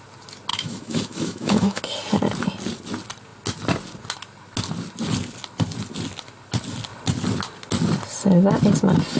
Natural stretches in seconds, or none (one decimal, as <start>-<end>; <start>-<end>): 0.0-0.5; 1.8-9.2